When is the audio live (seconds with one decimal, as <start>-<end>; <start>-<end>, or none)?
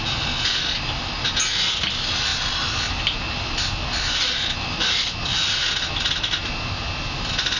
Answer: 0.0-7.6